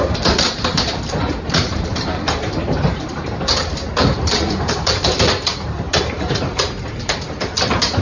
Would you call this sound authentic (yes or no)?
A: no